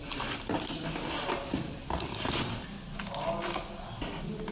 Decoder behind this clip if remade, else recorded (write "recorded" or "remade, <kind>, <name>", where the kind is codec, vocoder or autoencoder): recorded